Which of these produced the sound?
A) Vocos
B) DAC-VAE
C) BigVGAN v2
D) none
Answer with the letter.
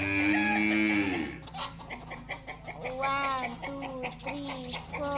D